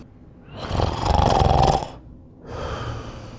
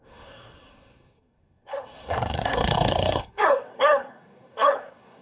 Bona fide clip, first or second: first